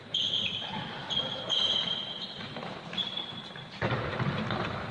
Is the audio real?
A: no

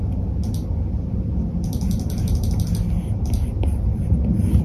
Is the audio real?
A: yes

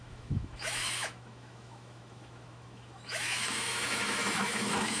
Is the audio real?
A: no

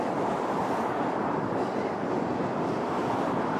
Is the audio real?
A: yes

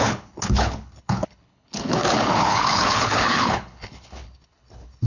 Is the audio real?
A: no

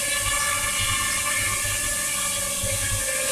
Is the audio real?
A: yes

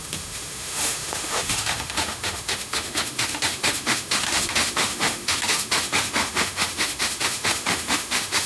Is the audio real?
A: no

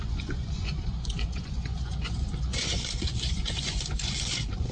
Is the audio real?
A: no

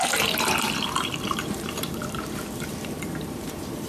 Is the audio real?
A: no